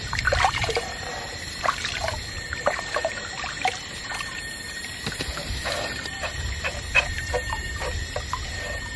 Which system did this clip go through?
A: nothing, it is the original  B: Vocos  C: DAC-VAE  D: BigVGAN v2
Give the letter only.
D